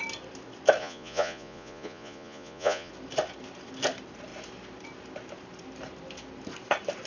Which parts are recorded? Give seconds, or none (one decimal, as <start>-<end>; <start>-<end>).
0.0-0.8; 2.9-7.1